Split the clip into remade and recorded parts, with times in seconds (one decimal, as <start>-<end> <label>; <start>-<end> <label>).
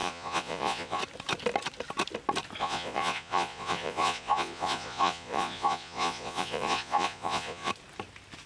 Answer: 0.0-1.0 remade; 1.0-2.6 recorded; 2.6-7.7 remade; 7.7-8.5 recorded